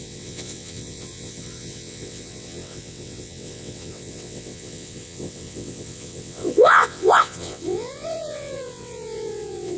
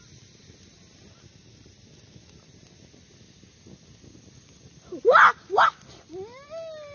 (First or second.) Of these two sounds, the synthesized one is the first